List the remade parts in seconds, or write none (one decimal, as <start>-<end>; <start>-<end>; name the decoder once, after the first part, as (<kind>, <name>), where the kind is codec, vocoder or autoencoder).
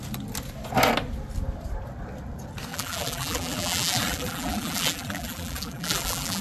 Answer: 2.7-6.4 (vocoder, BigVGAN v2)